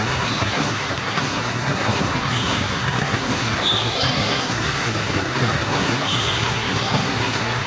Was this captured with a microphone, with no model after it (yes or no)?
no